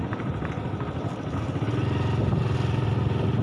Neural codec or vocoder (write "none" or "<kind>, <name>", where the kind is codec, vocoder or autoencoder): none